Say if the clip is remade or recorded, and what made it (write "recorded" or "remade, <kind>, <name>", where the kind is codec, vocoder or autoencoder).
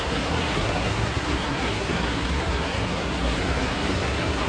remade, codec, SNAC